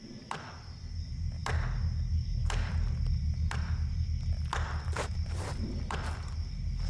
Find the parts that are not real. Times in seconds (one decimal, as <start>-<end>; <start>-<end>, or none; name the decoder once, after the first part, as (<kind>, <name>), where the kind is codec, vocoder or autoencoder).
5.1-6.1 (vocoder, BigVGAN v2)